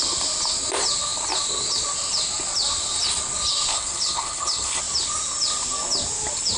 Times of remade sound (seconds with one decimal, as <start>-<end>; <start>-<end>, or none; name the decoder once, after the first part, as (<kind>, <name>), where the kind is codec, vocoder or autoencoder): 3.7-4.8 (codec, HILCodec)